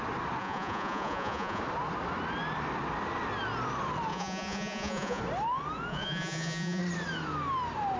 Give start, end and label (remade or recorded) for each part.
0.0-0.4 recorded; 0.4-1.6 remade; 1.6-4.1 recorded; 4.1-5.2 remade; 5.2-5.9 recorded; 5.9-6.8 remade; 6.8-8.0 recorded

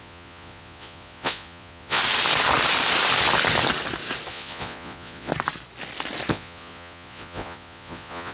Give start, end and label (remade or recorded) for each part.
0.0-2.0 remade; 2.0-4.3 recorded; 4.3-5.3 remade; 5.3-6.3 recorded; 6.3-8.3 remade

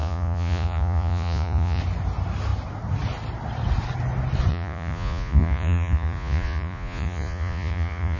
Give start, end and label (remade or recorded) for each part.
0.0-1.8 remade; 1.8-4.5 recorded; 4.5-8.2 remade

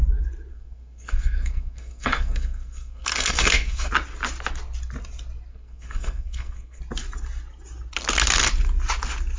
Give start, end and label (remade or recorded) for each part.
0.0-0.5 recorded; 0.5-3.9 remade; 3.9-5.5 recorded; 5.5-6.8 remade; 6.8-9.4 recorded